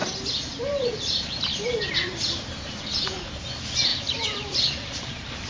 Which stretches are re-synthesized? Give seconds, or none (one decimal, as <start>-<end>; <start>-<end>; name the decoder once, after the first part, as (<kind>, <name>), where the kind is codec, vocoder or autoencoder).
0.0-3.3 (vocoder, BigVGAN v2); 3.9-5.1